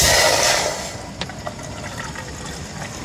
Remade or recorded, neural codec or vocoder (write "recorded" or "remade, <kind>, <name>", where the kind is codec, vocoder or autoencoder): recorded